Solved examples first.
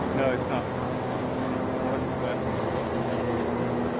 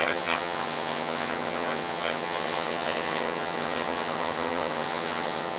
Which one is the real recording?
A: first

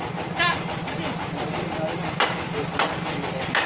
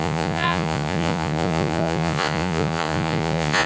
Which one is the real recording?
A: first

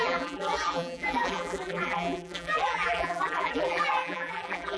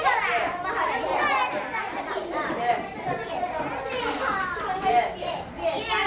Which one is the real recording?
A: second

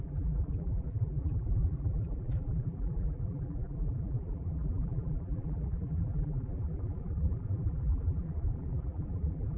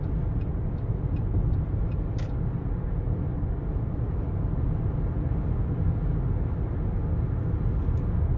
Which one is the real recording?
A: second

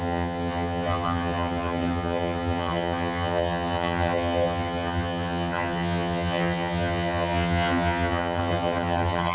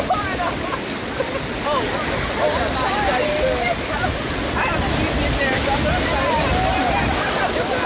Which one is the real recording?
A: second